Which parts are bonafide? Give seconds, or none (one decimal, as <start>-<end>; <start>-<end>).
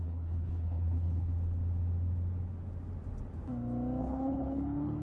1.3-4.0